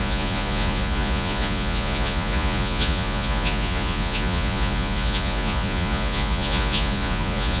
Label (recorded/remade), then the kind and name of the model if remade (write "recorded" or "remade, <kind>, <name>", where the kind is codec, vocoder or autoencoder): remade, vocoder, Vocos